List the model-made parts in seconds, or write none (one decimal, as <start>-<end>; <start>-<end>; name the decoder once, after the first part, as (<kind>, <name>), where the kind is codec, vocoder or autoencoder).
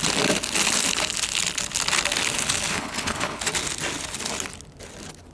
2.7-3.4 (codec, HILCodec)